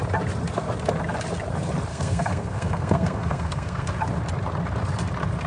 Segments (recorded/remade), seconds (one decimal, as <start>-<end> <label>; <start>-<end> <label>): 0.0-1.9 recorded; 1.9-3.9 remade; 3.9-5.5 recorded